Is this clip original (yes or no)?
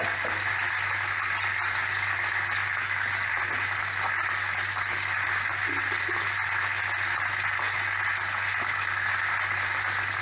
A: yes